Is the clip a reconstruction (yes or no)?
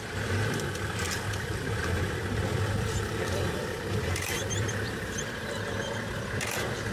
yes